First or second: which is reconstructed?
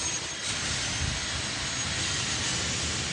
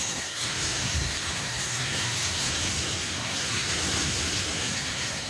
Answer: second